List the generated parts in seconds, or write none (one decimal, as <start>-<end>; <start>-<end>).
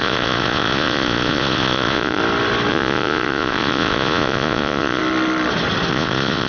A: 0.0-2.2; 2.7-5.0; 5.9-6.5